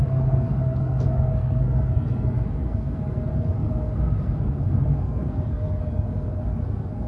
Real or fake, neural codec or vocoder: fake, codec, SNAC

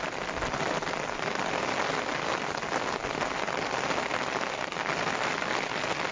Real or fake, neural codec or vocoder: real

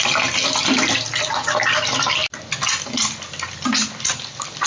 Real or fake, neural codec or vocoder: real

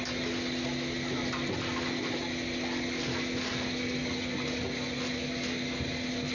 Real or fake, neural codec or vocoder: real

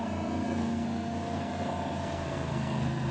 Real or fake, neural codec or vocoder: fake, codec, SNAC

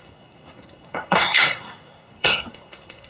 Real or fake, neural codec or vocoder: fake, codec, SNAC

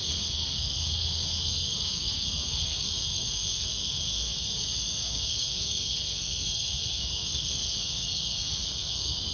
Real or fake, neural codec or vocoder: fake, codec, SNAC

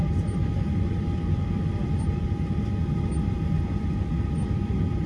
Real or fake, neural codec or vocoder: real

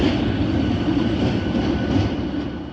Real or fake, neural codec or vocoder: real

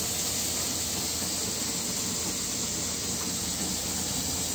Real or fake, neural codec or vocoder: real